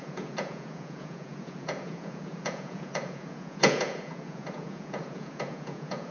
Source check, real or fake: fake